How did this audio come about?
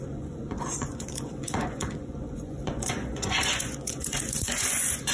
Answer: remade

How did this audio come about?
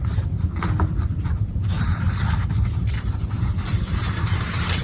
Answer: recorded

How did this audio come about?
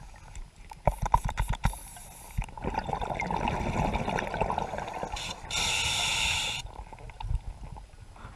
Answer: recorded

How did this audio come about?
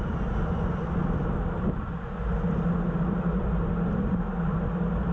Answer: recorded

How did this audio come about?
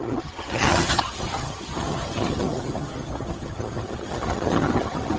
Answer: remade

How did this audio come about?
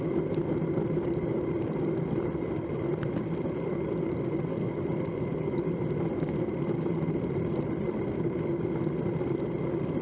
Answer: recorded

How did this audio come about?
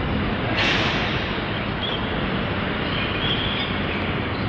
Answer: recorded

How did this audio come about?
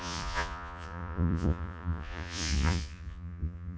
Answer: remade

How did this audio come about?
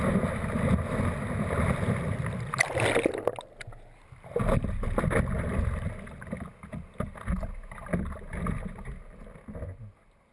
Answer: recorded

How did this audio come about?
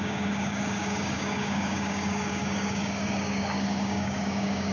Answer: remade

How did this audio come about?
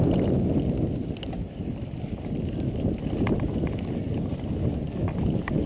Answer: recorded